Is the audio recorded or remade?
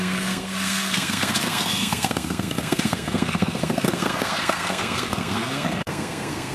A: remade